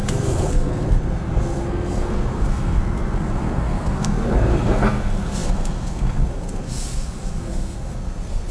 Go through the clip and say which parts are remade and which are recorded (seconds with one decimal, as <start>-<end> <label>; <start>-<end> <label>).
0.0-8.5 remade

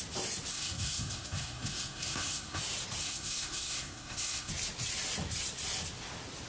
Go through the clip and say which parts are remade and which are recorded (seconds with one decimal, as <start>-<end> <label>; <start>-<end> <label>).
0.0-0.5 recorded; 0.5-2.6 remade; 2.6-3.0 recorded; 3.0-4.5 remade; 4.5-6.5 recorded

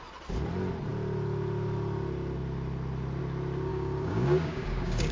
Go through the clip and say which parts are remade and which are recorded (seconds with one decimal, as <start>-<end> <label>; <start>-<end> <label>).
0.0-3.7 recorded; 3.7-5.1 remade

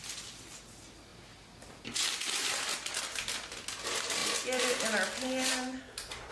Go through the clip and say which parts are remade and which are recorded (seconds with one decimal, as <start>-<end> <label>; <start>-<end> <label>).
0.0-6.3 recorded

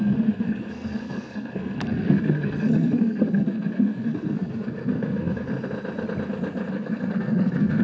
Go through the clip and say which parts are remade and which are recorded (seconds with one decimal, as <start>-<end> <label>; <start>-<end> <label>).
0.0-5.5 remade; 5.5-6.7 recorded; 6.7-7.8 remade